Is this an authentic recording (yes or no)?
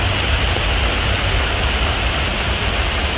yes